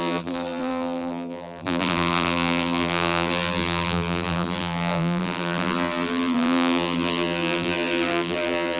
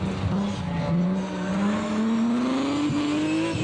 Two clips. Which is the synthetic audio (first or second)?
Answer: first